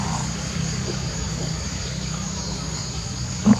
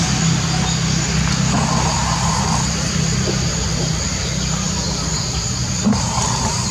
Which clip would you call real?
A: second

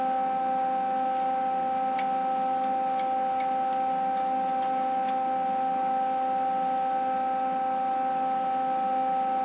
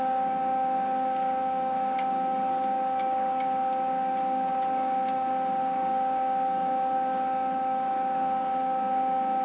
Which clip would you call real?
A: first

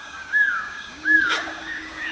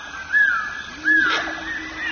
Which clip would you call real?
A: second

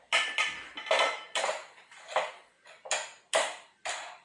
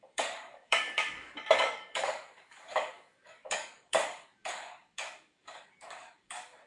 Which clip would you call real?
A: first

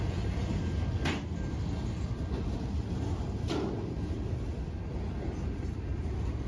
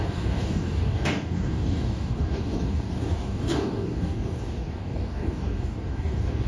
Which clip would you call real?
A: first